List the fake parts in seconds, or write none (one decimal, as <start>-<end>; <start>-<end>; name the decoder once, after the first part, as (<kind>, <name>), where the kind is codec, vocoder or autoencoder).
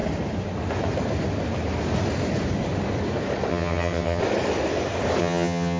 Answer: 3.5-4.2 (vocoder, HiFi-GAN); 5.2-5.8